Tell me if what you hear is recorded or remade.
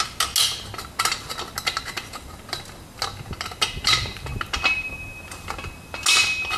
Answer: recorded